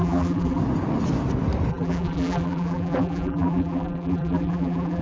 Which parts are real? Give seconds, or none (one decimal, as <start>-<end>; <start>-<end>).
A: 0.6-1.7